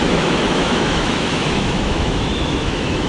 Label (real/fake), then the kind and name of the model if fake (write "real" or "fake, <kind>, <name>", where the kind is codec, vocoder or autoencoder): fake, autoencoder, DAC-VAE